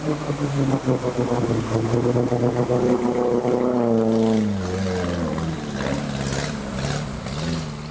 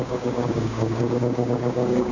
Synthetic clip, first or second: second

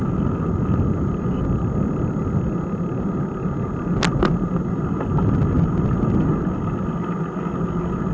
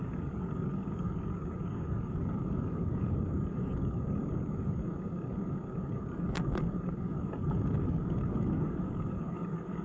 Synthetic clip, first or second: second